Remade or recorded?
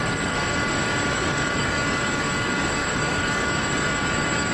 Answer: remade